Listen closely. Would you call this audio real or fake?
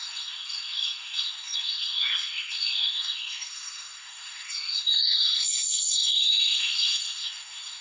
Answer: fake